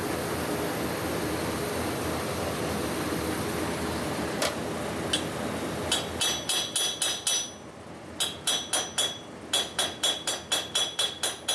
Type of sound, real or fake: real